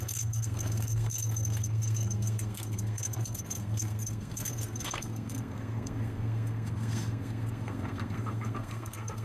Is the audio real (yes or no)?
no